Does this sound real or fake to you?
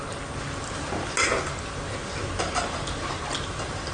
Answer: real